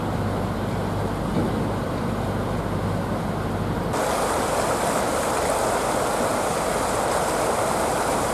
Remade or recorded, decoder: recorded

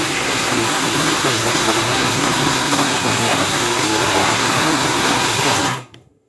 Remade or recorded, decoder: remade, codec, SNAC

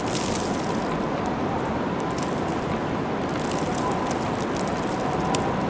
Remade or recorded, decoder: recorded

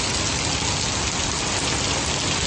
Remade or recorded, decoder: recorded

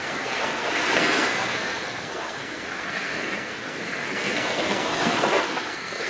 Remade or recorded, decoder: remade, codec, SNAC